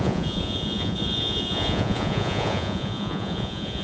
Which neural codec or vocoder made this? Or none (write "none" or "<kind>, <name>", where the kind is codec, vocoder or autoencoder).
vocoder, Vocos